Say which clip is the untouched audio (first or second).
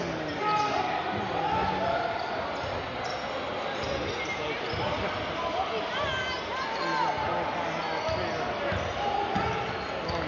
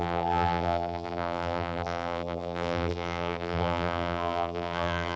first